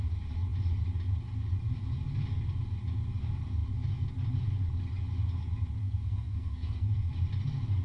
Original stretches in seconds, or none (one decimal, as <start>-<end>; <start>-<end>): 0.0-5.8; 7.1-7.8